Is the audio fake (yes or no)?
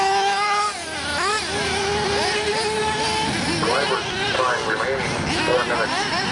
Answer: no